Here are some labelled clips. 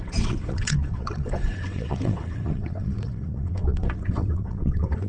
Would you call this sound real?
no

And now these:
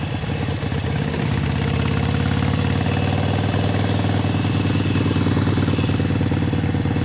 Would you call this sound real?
yes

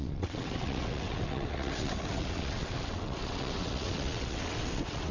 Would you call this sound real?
no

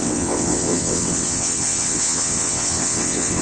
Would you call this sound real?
no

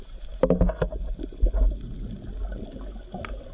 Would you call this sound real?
yes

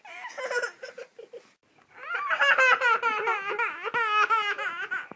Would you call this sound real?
yes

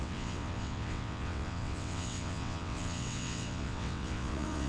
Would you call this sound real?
no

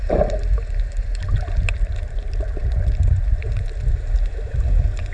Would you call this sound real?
yes